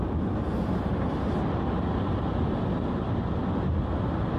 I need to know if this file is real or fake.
real